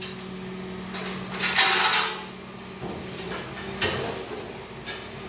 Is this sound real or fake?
real